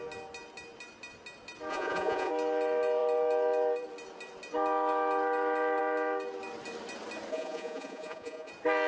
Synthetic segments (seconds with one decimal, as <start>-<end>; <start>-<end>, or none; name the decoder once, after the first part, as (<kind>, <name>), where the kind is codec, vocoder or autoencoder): 1.7-2.3 (vocoder, Vocos); 7.3-8.5